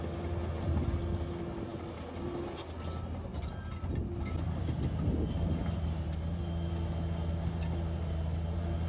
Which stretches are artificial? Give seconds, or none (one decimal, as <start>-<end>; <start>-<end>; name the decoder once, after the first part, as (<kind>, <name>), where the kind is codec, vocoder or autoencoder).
none